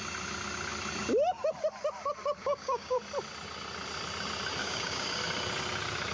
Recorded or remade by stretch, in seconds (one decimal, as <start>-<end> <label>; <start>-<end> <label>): 0.0-2.4 recorded; 2.4-3.0 remade; 3.0-4.6 recorded; 4.6-5.2 remade; 5.2-6.1 recorded